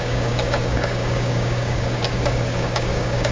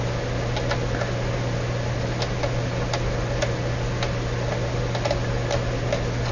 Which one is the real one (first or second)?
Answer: second